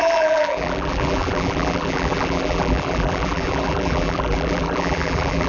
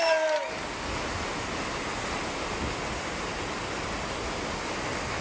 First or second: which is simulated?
first